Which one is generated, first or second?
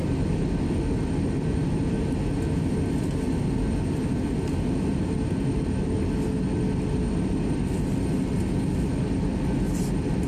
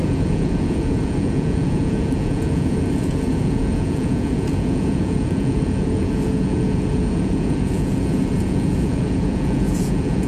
second